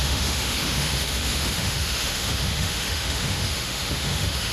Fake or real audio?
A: fake